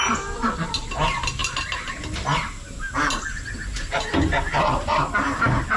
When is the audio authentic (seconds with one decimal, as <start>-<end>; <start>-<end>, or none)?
0.0-5.8